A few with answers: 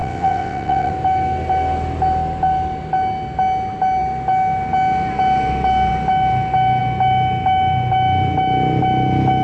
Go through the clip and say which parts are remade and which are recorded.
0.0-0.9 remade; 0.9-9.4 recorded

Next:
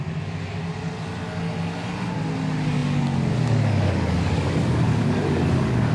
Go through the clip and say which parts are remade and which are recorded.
0.0-0.6 remade; 0.6-2.4 recorded; 2.4-5.9 remade